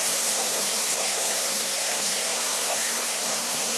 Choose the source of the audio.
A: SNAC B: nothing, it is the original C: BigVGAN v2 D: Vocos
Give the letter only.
A